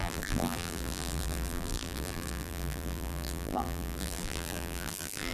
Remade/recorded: remade